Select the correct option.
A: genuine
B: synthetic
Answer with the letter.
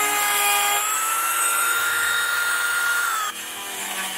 B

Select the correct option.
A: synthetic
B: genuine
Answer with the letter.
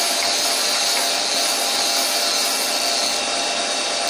B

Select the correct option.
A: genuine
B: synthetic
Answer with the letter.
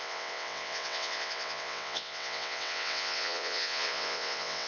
B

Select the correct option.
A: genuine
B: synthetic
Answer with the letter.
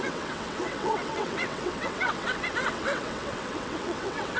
B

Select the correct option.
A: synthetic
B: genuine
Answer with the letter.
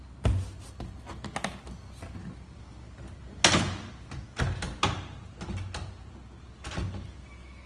B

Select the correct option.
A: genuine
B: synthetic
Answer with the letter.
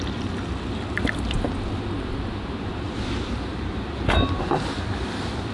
B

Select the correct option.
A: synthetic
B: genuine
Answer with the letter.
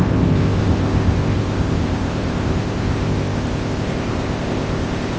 A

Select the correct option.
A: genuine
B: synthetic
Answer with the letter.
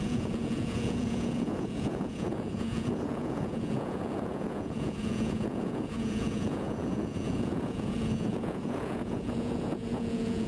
B